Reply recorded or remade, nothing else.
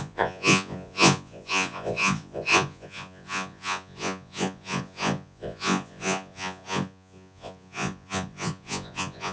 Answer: remade